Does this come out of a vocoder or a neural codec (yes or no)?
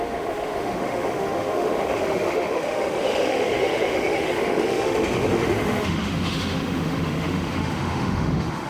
yes